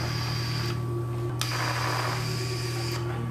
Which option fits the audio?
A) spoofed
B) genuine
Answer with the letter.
B